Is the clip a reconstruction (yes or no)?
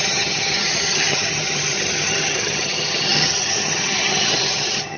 yes